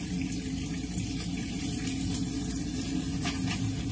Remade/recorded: recorded